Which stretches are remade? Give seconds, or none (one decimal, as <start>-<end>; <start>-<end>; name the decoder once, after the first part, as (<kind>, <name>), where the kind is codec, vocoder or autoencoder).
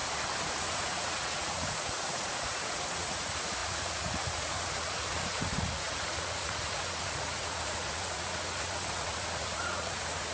0.6-10.3 (vocoder, Vocos)